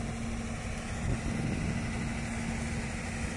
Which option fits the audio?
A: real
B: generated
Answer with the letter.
A